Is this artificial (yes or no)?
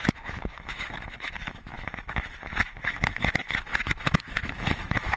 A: yes